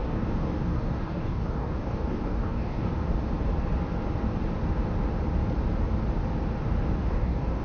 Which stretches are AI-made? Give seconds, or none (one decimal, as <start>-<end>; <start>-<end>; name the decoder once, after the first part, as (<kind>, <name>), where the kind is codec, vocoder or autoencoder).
0.0-2.9 (codec, DAC); 7.0-7.6